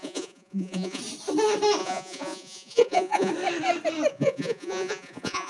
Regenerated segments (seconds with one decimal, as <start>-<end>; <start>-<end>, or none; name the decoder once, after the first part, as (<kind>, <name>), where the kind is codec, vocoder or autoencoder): 0.0-1.0 (vocoder, Vocos); 1.8-3.3; 4.1-5.5